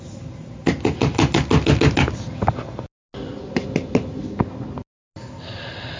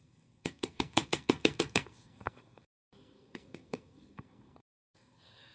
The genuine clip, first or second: first